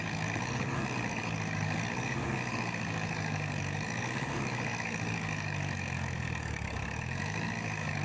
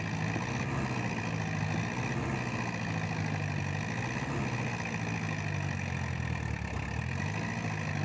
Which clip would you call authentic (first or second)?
second